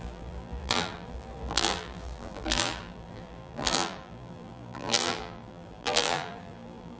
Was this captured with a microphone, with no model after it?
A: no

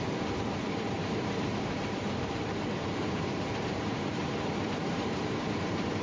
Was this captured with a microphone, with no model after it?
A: no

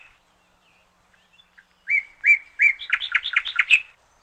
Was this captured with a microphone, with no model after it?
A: no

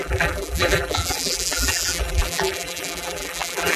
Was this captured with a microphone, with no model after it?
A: no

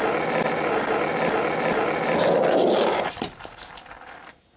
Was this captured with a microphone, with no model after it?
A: yes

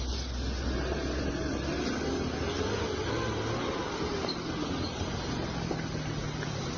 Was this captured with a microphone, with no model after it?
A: yes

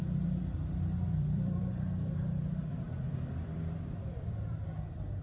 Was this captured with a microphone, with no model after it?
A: no